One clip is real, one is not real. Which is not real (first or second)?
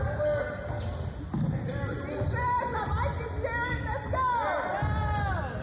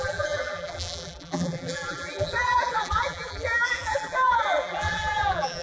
second